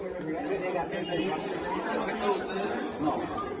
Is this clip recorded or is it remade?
recorded